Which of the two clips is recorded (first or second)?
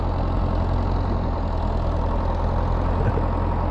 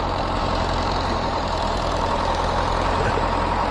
first